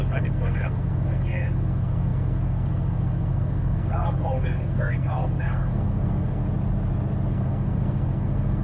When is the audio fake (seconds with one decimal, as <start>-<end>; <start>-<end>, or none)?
0.0-6.4; 7.3-8.6